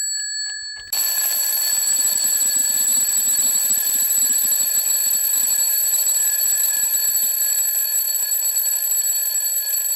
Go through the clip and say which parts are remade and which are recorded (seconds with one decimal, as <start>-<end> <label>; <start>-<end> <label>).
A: 0.0-10.0 recorded